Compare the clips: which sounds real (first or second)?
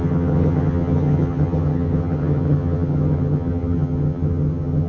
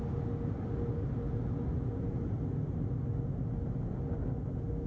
second